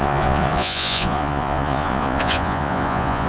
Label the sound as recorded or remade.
remade